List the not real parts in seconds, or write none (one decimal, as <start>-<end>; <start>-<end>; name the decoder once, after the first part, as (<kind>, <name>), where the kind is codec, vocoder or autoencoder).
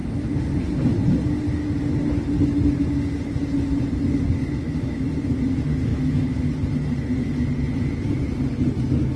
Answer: 4.4-5.1 (autoencoder, DAC-VAE); 5.9-6.5